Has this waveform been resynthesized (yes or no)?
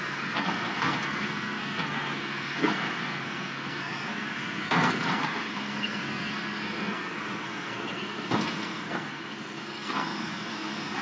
yes